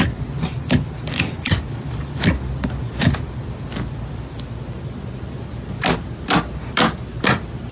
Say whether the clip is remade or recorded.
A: recorded